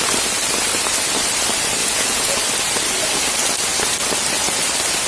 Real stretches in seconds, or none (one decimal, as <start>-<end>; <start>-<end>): 0.0-1.8; 2.4-5.1